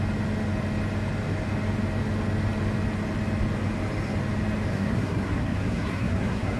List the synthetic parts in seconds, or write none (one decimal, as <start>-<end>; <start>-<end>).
4.7-6.6